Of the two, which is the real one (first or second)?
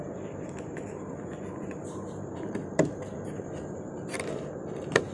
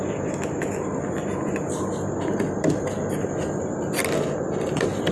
second